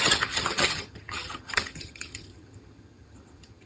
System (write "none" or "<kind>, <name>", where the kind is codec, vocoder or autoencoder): vocoder, HiFi-GAN